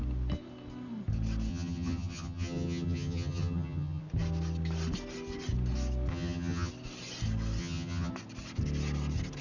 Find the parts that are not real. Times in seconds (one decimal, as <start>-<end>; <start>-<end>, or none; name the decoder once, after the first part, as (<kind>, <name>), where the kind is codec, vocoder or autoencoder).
1.5-4.0 (vocoder, HiFi-GAN); 6.1-6.7; 7.6-8.1